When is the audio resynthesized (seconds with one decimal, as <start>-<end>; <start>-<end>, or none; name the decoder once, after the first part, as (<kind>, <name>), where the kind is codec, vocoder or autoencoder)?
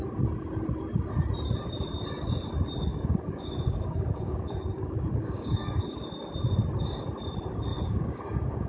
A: 2.9-6.1 (codec, DAC); 7.7-8.7